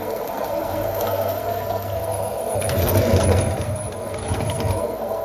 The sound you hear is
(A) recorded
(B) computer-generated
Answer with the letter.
B